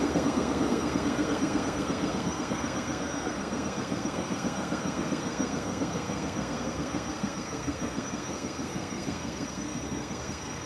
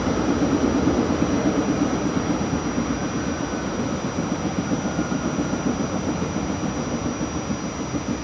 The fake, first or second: first